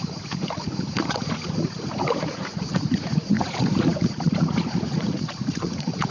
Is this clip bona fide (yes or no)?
no